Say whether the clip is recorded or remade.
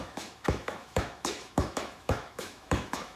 remade